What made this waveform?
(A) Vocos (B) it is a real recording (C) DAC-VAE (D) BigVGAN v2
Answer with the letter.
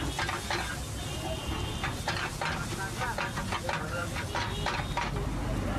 B